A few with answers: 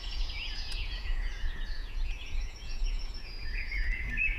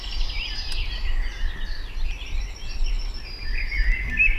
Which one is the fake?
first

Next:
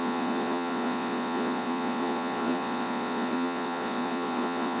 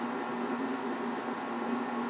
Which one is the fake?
first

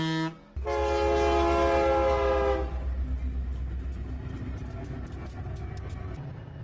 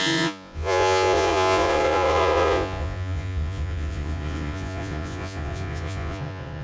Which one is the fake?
second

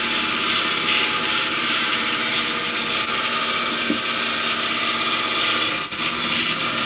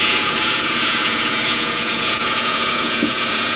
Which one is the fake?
second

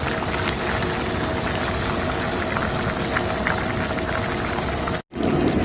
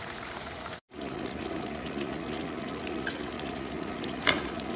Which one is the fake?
second